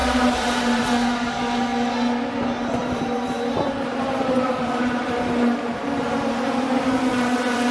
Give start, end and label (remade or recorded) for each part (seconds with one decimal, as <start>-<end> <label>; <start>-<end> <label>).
0.0-0.8 remade; 0.8-2.8 recorded; 2.8-6.8 remade; 6.8-7.7 recorded